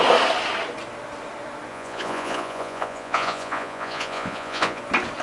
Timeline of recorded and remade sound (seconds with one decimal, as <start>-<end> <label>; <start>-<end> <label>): 0.0-1.7 recorded; 1.7-4.8 remade; 4.8-5.2 recorded